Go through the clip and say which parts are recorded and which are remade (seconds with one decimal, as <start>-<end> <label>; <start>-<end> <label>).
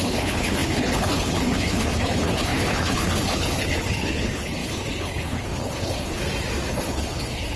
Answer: 0.0-6.2 remade; 6.2-6.7 recorded; 6.7-7.6 remade